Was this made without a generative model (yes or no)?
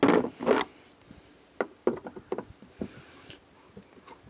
yes